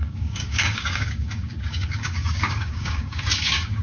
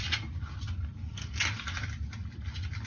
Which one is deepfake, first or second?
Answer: first